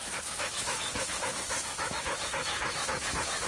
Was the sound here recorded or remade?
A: remade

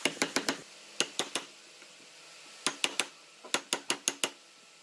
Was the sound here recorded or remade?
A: recorded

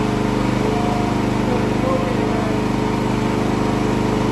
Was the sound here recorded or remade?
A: recorded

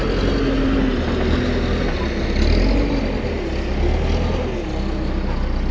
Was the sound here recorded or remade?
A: recorded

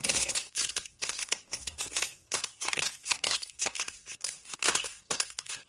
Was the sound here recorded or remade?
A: remade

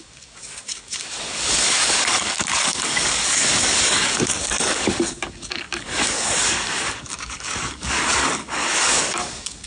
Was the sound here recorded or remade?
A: remade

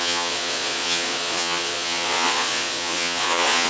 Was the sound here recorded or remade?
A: remade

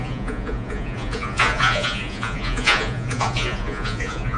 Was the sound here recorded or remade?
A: remade